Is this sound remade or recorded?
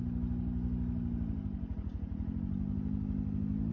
recorded